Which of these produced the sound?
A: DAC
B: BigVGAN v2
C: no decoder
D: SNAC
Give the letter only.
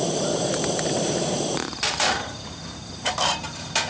B